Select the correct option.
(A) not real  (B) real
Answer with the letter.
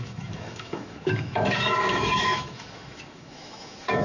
A